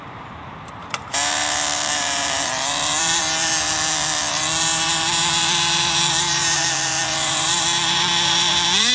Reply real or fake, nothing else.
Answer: fake